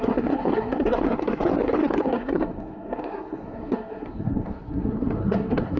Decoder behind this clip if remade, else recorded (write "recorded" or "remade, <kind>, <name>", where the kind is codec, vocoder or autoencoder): remade, codec, SNAC